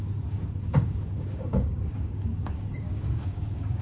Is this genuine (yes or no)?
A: no